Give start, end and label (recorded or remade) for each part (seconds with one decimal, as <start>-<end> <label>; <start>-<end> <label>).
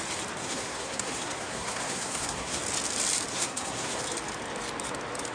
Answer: 0.0-0.4 recorded; 0.4-2.6 remade; 2.6-3.3 recorded; 3.3-4.0 remade; 4.0-5.3 recorded